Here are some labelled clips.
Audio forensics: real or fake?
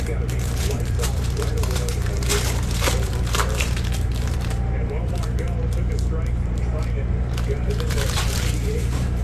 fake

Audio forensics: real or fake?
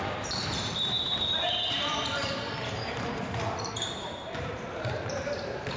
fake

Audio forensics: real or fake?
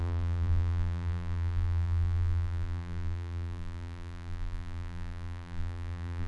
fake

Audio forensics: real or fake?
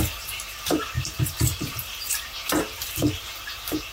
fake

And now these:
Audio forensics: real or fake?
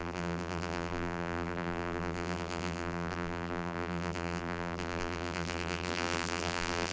fake